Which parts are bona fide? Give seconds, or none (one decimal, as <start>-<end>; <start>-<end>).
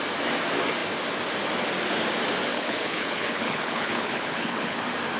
0.0-2.5; 4.8-5.2